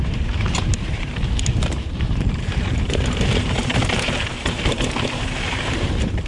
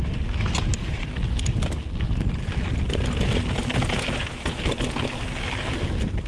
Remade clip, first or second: first